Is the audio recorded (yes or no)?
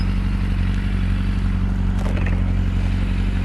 yes